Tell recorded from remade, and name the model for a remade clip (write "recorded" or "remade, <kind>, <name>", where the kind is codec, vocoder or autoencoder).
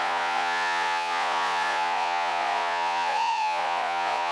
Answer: remade, vocoder, Vocos